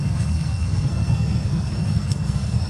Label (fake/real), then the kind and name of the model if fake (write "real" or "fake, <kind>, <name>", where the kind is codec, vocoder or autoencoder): fake, codec, SNAC